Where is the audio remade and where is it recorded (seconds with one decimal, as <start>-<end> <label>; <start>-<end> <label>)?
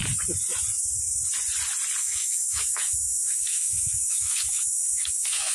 0.0-2.0 recorded; 2.0-5.5 remade